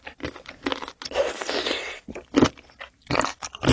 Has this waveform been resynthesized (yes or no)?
no